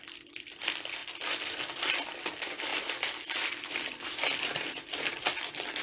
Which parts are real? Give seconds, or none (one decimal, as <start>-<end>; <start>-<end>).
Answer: 1.0-1.8; 2.7-3.3